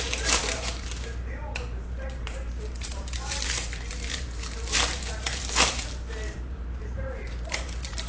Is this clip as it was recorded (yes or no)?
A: no